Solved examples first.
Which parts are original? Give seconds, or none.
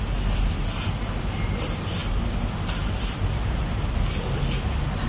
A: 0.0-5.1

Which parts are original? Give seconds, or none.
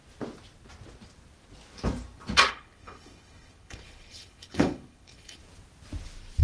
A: 0.0-2.5; 5.4-6.4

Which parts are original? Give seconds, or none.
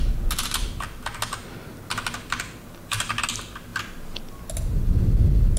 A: 0.0-5.6